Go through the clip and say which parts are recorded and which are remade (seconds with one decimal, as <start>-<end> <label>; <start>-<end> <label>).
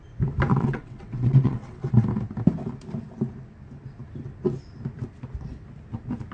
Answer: 0.0-0.5 recorded; 0.5-1.9 remade; 1.9-6.3 recorded